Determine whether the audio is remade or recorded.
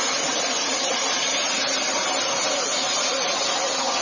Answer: recorded